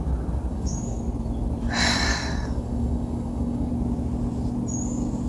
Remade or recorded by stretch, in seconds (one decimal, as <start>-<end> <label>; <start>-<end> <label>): 0.0-0.5 recorded; 0.5-1.0 remade; 1.0-2.1 recorded; 2.1-3.7 remade; 3.7-5.3 recorded